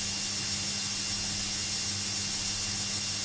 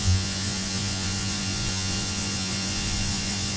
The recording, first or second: first